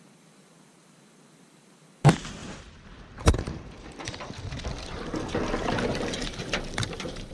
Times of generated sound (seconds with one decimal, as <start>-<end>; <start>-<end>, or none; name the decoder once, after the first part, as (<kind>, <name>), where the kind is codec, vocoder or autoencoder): 2.4-4.2 (vocoder, BigVGAN v2); 5.9-7.3